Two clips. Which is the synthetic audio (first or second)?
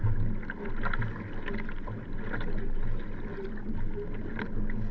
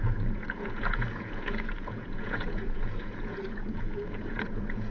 second